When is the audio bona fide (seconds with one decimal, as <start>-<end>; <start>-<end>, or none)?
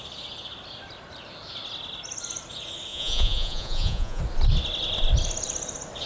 0.0-2.9; 4.2-6.1